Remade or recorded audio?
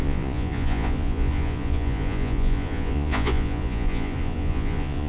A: remade